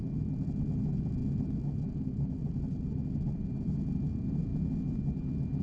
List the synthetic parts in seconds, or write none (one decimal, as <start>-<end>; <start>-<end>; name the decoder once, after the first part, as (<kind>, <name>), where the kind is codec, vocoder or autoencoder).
none